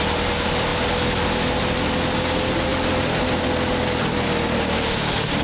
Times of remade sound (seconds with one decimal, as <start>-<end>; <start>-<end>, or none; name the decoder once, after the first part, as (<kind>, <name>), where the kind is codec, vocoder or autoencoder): none

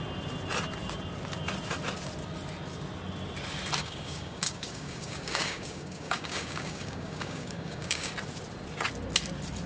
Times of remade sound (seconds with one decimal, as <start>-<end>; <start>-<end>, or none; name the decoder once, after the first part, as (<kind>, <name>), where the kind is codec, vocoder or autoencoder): 3.8-8.1 (codec, DAC)